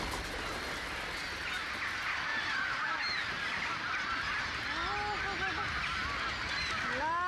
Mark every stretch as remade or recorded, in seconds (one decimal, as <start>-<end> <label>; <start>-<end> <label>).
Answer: 0.0-2.3 recorded; 2.3-4.4 remade; 4.4-7.3 recorded